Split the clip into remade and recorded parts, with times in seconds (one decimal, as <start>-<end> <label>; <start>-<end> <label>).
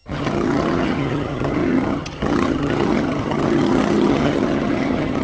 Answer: 0.0-5.2 remade